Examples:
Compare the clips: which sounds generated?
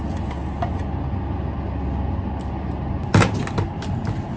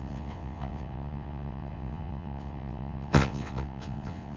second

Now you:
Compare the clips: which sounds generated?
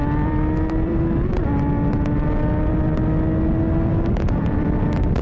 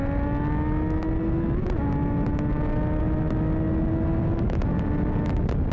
first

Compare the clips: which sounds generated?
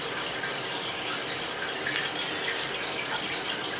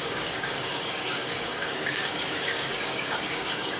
second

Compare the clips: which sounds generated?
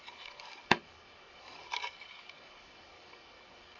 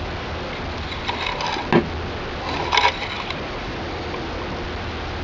first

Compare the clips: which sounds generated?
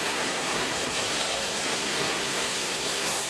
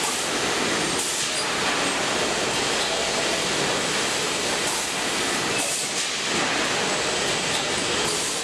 first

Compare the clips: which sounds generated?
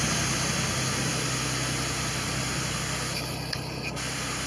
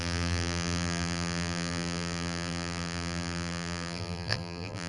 second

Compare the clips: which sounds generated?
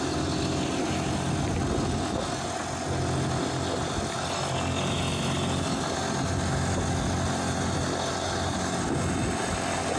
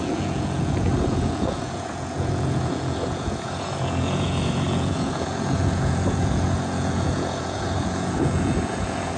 second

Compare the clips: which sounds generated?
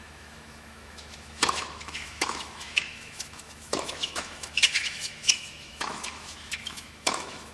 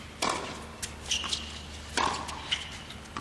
first